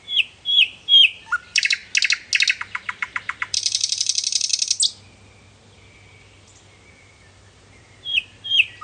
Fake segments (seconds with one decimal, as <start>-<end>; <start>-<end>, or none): 0.0-1.8; 2.6-4.5; 7.0-8.8